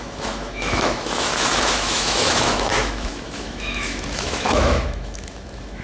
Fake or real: fake